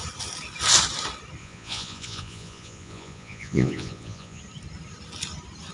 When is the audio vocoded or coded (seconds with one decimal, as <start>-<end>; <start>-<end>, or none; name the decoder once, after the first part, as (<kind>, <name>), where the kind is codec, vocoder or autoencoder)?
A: 1.4-4.4 (vocoder, Vocos)